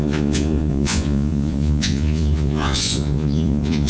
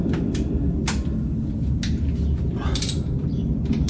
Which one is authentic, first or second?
second